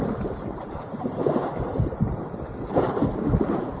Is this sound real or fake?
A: fake